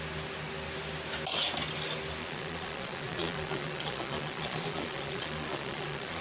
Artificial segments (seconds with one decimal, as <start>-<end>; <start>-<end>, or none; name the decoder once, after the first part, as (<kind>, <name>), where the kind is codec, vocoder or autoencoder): 2.2-6.2 (vocoder, Vocos)